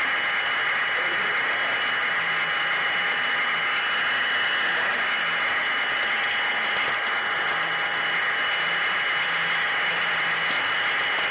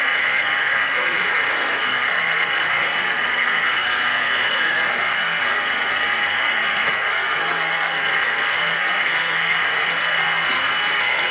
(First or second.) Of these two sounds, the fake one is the second